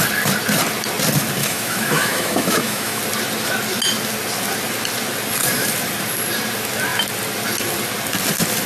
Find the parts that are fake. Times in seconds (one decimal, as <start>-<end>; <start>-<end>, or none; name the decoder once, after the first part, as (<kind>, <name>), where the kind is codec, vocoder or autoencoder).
1.4-3.0 (autoencoder, DAC-VAE)